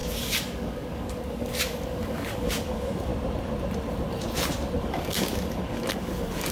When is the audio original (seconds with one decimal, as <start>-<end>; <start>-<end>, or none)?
3.1-4.8